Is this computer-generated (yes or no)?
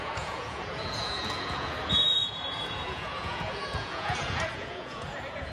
yes